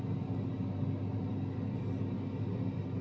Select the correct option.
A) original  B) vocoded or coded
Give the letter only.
A